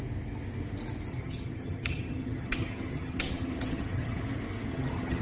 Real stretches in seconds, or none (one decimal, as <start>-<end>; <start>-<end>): 0.0-1.1; 4.2-4.7